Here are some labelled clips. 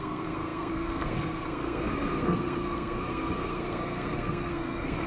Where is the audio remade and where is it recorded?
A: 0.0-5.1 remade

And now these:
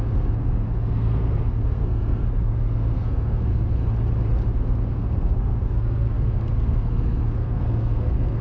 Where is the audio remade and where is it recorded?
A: 0.0-3.8 remade; 3.8-4.5 recorded; 4.5-8.4 remade

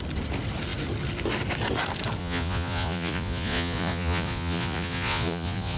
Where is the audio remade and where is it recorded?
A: 0.0-2.2 recorded; 2.2-5.8 remade

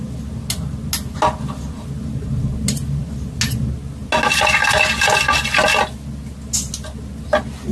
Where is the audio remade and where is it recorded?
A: 0.0-7.7 recorded

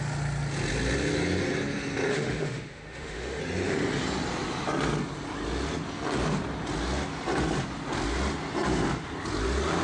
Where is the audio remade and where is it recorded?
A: 0.0-2.1 recorded; 2.1-3.4 remade; 3.4-9.8 recorded